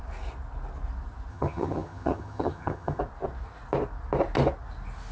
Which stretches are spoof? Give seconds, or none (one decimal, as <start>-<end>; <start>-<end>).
1.3-3.0